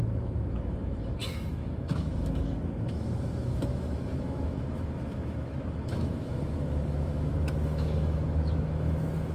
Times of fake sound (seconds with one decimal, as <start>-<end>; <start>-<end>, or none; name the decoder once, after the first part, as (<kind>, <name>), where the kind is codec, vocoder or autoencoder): 0.0-9.3 (autoencoder, DAC-VAE)